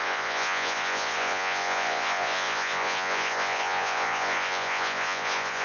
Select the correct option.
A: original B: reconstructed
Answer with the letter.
B